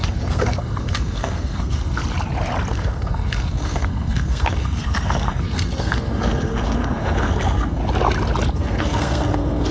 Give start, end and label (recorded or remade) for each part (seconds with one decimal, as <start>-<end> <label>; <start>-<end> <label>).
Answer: 0.0-2.0 remade; 2.0-2.7 recorded; 2.7-7.8 remade; 7.8-8.5 recorded; 8.5-9.7 remade